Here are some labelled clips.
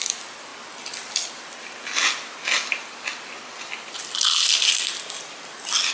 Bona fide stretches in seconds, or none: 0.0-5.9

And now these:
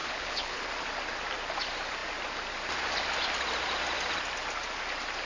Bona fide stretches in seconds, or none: 0.6-5.3

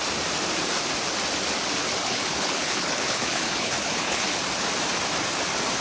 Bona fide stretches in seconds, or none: 0.0-2.0; 4.4-5.8

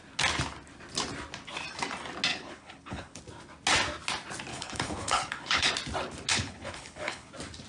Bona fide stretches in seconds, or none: 0.0-2.3; 3.2-4.5; 5.7-6.3; 7.3-7.7

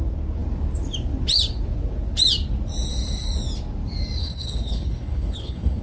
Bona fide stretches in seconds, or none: 0.0-4.2

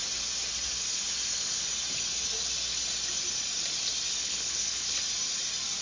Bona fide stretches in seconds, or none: 0.0-4.2; 5.0-5.8

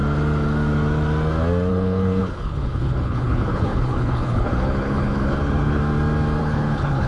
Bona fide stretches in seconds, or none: 0.0-1.7; 5.8-6.4

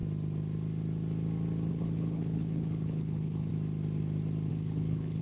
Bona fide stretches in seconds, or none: 0.0-1.7; 3.5-4.5